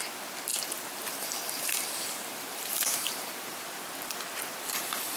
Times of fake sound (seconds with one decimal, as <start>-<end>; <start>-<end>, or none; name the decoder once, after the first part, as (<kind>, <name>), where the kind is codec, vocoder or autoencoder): 0.5-3.6 (vocoder, BigVGAN v2)